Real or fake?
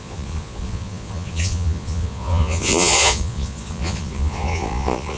fake